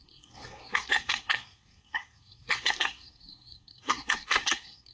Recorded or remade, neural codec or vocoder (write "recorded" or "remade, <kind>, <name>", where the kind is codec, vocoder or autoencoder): remade, codec, SNAC